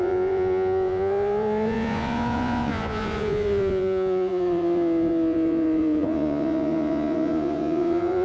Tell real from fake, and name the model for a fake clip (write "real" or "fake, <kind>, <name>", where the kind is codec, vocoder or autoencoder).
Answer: fake, vocoder, Vocos